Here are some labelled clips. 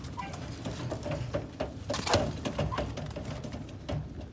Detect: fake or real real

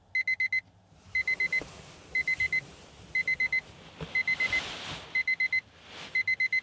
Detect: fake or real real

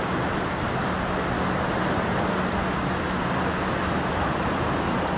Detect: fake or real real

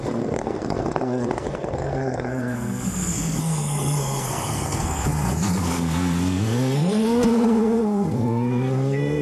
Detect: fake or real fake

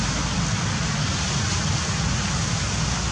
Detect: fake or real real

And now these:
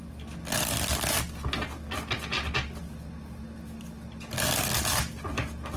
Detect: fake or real real